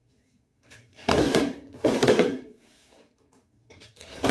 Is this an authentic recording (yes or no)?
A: no